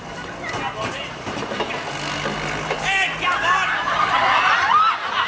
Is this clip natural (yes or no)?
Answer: yes